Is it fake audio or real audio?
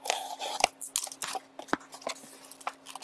real